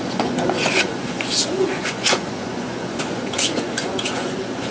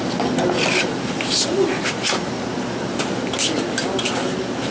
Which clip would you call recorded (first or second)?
second